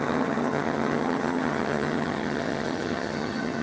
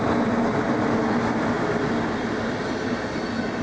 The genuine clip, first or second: second